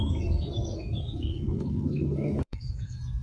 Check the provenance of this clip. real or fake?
fake